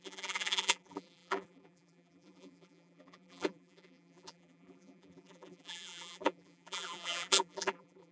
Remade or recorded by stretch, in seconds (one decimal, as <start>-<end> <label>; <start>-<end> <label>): 0.0-8.1 remade